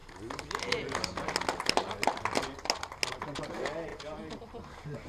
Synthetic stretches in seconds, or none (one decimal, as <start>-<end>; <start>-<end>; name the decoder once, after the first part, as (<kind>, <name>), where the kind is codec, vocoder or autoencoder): none